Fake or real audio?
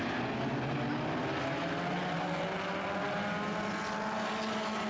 real